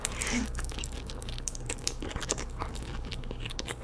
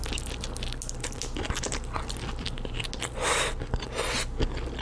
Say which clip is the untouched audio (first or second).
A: second